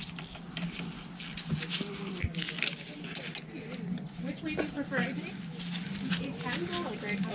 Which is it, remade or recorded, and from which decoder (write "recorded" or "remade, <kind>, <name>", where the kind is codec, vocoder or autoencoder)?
recorded